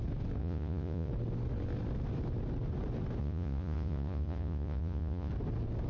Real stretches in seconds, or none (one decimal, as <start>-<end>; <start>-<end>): 0.0-0.4; 1.1-3.2; 5.3-5.9